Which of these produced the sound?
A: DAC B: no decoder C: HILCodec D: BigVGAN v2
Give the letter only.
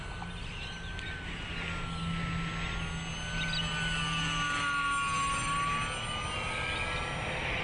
B